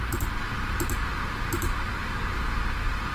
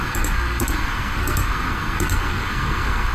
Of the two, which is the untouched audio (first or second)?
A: first